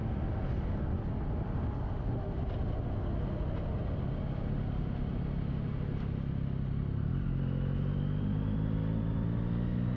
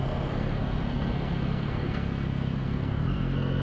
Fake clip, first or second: second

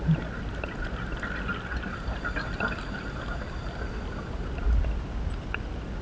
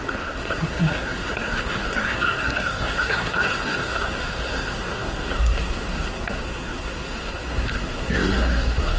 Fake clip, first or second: second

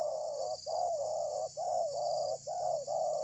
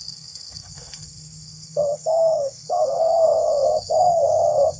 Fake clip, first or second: second